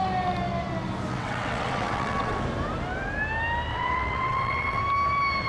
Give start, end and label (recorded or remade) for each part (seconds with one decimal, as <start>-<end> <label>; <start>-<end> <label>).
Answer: 0.0-1.1 recorded; 1.1-2.4 remade; 2.4-3.7 recorded; 3.7-4.8 remade; 4.8-5.5 recorded